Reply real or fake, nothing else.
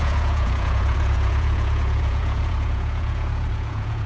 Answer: fake